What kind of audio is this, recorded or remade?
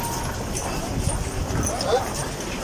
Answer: recorded